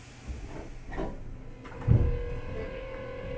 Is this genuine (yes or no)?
yes